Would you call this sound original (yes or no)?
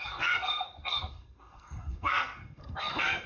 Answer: no